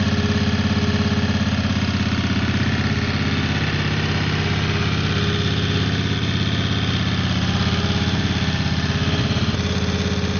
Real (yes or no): yes